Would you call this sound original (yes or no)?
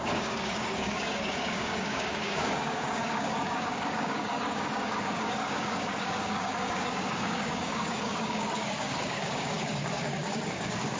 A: no